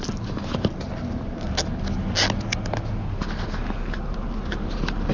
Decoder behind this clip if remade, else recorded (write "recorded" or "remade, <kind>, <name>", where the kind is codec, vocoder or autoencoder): recorded